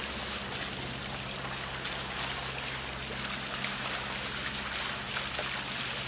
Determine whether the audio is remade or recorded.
recorded